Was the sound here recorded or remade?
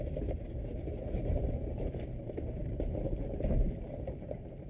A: remade